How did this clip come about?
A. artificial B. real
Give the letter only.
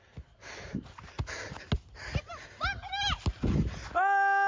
B